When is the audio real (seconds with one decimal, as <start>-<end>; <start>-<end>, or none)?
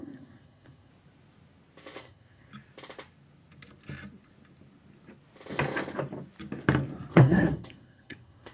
0.9-2.0; 2.5-7.1